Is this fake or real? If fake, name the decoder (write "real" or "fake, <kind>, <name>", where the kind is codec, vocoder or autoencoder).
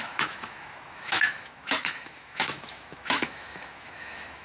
fake, autoencoder, DAC-VAE